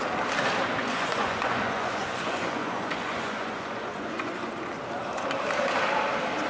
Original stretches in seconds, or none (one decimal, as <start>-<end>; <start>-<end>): 0.0-0.8; 4.7-6.5

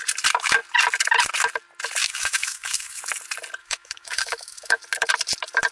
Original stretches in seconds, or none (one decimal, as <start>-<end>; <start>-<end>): 0.0-2.0; 3.0-3.6; 4.8-5.7

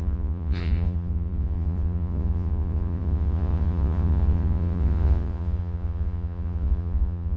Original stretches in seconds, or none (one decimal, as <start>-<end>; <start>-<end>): none

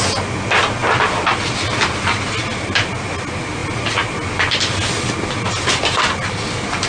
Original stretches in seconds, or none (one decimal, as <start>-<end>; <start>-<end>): 0.0-6.9

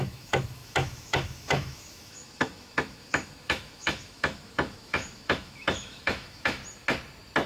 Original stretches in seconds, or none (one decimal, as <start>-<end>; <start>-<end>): 6.6-7.5

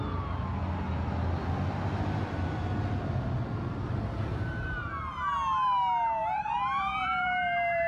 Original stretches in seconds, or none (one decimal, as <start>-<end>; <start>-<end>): 0.0-4.3; 4.9-6.2

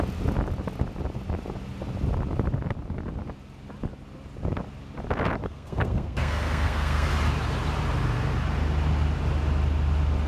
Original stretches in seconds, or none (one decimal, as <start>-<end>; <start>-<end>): 0.0-5.4; 7.1-10.3